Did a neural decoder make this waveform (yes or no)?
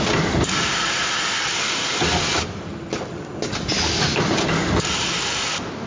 no